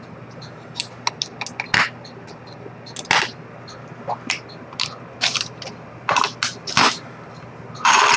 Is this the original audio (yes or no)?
yes